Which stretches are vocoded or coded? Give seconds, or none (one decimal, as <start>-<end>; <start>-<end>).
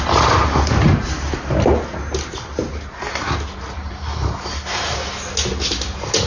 none